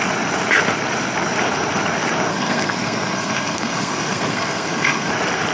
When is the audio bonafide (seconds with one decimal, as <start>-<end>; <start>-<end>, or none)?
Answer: 0.0-2.3; 5.1-5.5